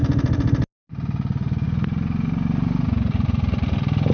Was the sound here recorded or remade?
recorded